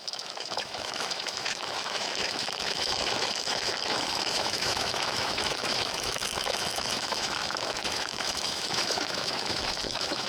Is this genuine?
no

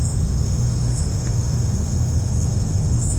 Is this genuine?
no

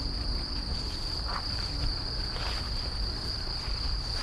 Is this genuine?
yes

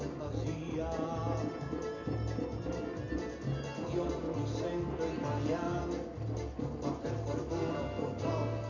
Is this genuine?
yes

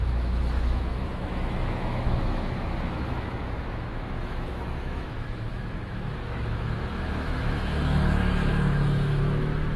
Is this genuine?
no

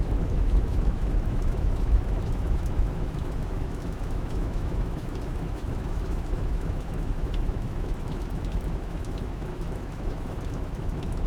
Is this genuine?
no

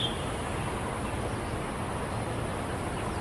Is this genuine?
yes